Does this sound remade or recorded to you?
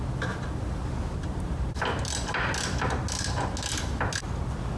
recorded